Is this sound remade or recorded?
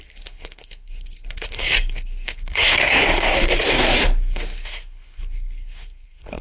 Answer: remade